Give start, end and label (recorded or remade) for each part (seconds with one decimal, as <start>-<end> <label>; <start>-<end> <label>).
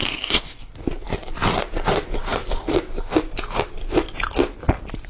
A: 0.0-0.7 remade; 0.7-5.1 recorded